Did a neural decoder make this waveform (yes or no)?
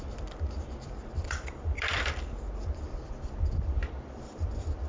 yes